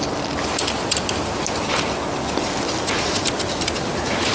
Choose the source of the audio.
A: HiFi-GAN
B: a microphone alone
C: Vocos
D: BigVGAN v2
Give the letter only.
B